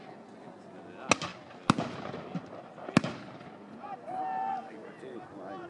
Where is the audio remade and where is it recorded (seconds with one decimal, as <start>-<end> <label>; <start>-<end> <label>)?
0.0-5.7 recorded